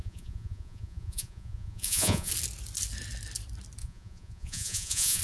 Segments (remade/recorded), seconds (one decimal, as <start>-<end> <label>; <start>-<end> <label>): 0.0-2.3 remade; 2.3-3.8 recorded; 3.8-5.2 remade